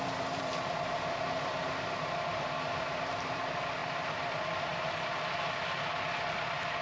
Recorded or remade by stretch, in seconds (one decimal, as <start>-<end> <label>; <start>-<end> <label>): 0.0-3.8 remade; 3.8-5.5 recorded; 5.5-6.8 remade